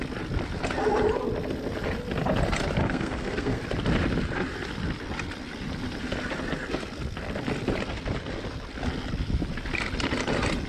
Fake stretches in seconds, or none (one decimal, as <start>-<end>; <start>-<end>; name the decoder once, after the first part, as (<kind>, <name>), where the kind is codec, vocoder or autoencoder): 2.8-3.6 (codec, SNAC)